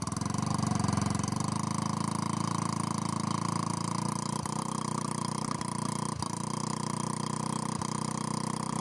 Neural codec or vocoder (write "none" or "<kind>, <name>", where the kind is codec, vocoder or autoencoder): none